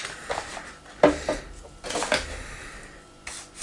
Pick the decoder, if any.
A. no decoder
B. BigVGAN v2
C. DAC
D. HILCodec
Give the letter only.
A